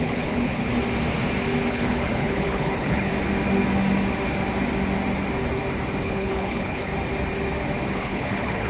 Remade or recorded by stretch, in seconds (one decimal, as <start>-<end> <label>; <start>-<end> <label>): 0.0-0.7 remade; 0.7-1.7 recorded; 1.7-3.1 remade; 3.1-6.0 recorded; 6.0-6.9 remade; 6.9-7.9 recorded; 7.9-8.7 remade